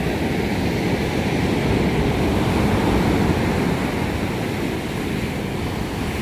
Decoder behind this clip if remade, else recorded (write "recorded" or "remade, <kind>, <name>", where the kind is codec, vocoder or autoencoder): recorded